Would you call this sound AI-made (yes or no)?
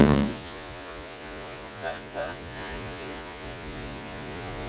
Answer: yes